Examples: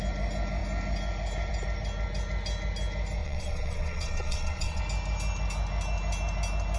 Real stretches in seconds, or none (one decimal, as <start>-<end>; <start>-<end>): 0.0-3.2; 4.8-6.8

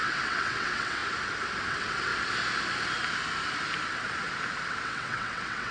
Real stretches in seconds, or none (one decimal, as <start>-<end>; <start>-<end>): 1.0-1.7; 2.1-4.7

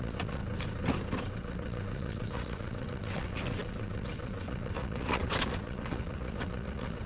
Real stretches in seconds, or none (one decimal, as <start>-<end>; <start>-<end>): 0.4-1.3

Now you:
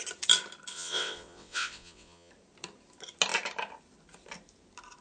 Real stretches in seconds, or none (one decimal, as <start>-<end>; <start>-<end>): 0.0-0.7; 2.3-5.0